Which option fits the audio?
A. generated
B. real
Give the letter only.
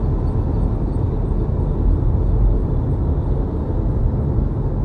B